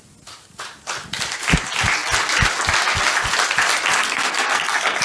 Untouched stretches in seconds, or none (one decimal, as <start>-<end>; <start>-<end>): 0.0-4.0

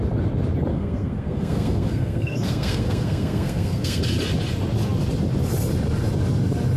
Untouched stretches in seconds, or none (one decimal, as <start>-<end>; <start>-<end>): 0.0-0.7; 4.0-6.8

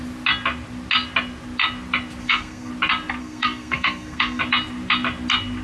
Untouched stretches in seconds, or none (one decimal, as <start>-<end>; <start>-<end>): 0.0-2.2; 2.7-3.2; 4.4-5.6

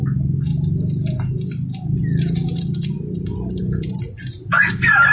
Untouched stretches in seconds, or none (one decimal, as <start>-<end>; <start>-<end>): 0.0-5.1

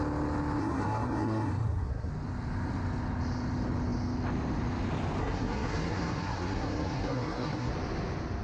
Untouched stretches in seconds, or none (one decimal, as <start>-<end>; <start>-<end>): 0.0-0.6; 2.1-5.2; 7.7-8.4

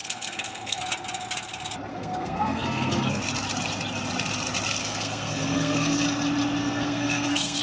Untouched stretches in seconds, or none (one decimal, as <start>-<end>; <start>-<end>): 0.8-1.9; 3.2-4.8; 6.0-6.6

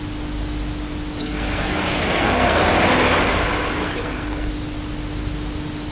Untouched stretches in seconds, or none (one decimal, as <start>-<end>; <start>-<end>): 0.0-1.2; 2.6-3.8; 4.5-5.9